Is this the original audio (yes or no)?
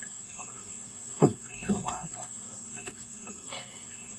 no